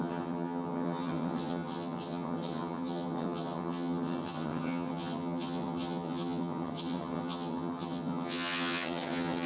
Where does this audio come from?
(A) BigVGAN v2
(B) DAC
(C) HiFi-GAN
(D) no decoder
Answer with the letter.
C